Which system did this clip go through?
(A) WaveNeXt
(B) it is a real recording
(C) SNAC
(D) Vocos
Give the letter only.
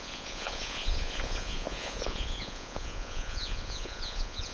D